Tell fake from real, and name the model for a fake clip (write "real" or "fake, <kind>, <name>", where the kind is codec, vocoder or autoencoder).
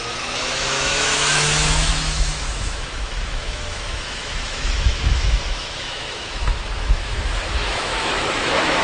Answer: fake, autoencoder, DAC-VAE